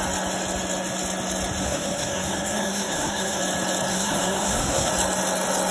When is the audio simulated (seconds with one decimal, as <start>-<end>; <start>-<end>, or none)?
1.6-3.4; 3.9-4.9